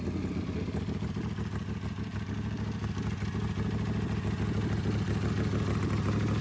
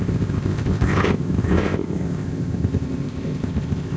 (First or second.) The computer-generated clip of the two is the second